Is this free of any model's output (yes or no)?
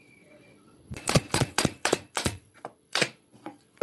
no